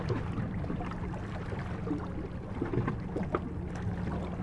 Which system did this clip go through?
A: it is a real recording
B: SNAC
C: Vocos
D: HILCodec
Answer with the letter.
A